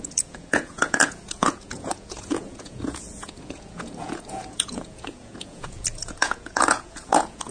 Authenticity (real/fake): fake